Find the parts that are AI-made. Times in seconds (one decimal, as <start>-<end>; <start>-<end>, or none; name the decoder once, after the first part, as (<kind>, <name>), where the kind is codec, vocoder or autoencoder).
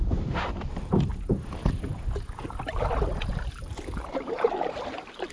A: 0.0-1.1 (vocoder, BigVGAN v2); 3.3-5.3